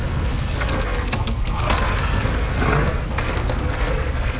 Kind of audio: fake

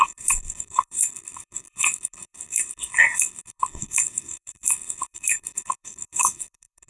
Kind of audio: fake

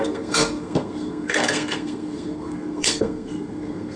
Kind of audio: fake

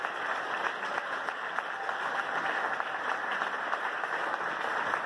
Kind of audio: real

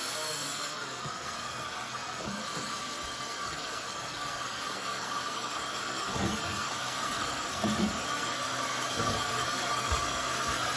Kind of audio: fake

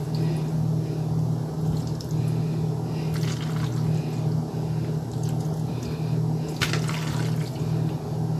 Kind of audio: real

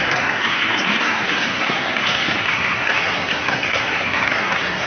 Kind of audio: fake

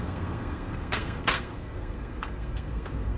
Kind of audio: fake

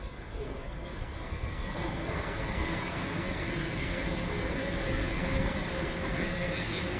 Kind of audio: fake